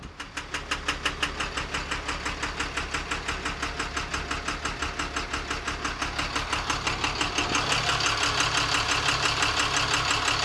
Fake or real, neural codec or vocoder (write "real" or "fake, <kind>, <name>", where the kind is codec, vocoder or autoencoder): real